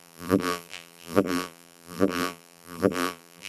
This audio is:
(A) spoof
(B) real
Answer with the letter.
A